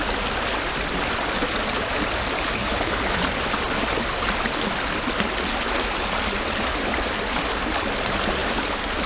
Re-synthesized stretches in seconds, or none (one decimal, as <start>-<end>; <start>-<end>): 2.6-3.2

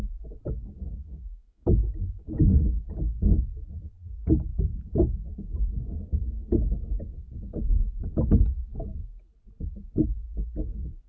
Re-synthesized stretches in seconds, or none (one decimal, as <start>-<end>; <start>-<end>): 1.0-3.2

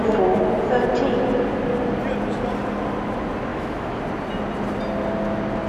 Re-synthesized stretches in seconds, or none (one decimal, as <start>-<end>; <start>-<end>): 3.5-4.0

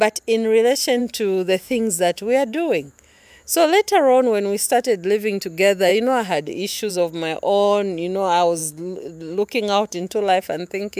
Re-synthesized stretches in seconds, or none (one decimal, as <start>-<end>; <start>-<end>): 1.0-5.4; 5.9-6.9; 8.6-11.0

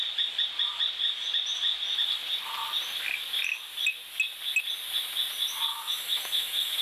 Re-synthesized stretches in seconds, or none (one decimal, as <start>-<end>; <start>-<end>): 5.7-6.8

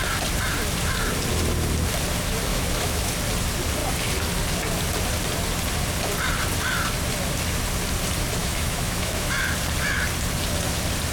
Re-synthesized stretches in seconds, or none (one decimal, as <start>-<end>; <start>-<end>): 2.5-3.1; 8.4-9.3